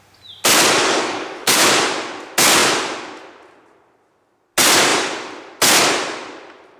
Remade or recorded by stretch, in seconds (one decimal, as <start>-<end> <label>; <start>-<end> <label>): 0.0-0.8 recorded; 0.8-1.6 remade; 1.6-6.8 recorded